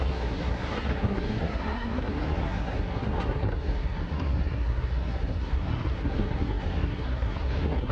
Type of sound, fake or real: fake